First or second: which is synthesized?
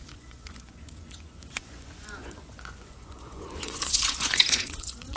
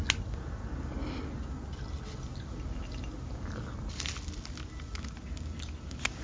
first